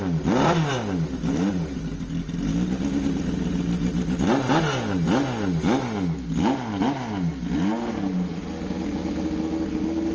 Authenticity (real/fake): real